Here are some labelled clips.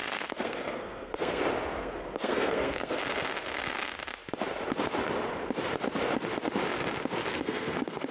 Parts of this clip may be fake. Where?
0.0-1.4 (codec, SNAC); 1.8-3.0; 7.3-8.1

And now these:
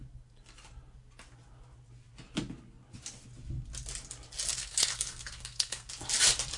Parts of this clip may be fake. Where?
4.5-5.9 (codec, SNAC)

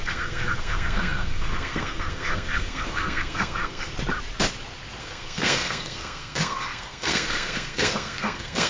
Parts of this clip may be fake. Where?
0.0-3.9 (codec, SNAC); 5.0-8.7

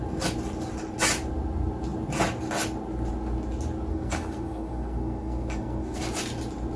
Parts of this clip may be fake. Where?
3.9-6.0 (codec, SNAC)